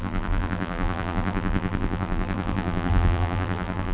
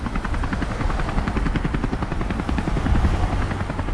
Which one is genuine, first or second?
second